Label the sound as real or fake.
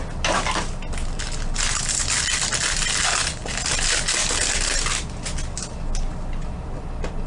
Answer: real